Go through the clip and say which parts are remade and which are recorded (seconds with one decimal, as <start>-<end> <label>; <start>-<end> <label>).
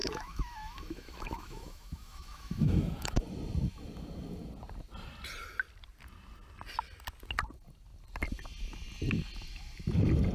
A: 0.0-3.2 remade; 3.2-10.3 recorded